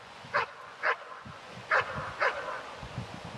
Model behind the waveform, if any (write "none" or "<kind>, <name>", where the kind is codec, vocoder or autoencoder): vocoder, Vocos